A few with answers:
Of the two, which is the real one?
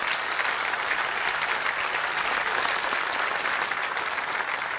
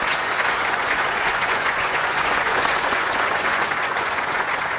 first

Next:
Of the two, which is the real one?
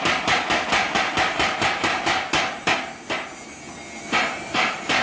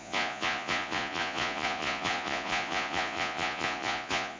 first